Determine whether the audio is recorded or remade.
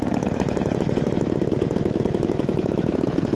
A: remade